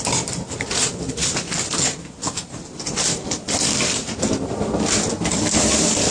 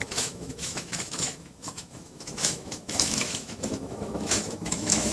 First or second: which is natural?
first